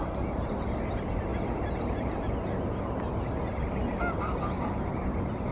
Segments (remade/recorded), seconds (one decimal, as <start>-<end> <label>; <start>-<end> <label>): 0.0-5.5 recorded